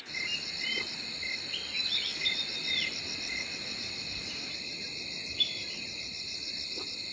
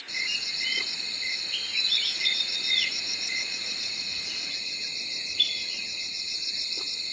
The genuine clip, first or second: first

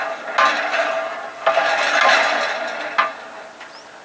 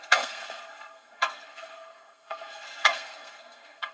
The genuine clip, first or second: first